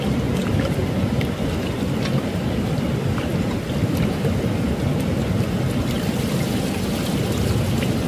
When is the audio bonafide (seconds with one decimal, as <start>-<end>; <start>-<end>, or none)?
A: 0.0-8.1

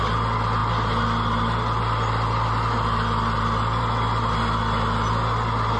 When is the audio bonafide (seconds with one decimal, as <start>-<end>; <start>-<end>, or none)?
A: 0.0-5.8

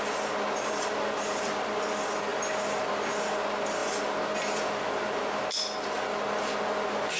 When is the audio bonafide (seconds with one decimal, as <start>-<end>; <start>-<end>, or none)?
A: 0.0-7.2

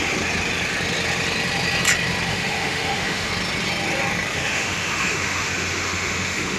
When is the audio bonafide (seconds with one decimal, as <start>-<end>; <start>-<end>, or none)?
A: 0.0-2.3; 3.3-4.3

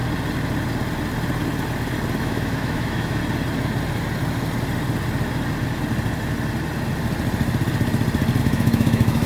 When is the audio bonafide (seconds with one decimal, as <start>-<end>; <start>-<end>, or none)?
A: 0.0-2.2; 3.2-8.4

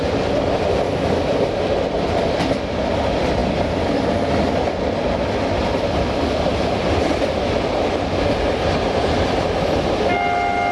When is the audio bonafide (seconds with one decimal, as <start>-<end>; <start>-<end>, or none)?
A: 0.0-10.7

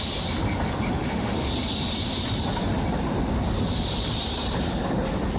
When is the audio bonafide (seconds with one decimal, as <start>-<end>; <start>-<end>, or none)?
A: 0.0-1.0; 1.5-5.4

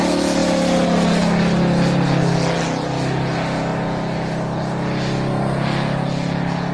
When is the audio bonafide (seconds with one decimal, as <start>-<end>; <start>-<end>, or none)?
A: 0.0-6.7